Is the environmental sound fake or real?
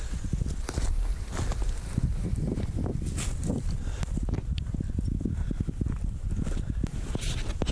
real